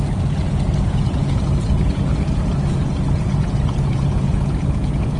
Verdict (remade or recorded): remade